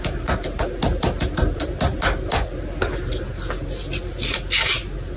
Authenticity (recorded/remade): recorded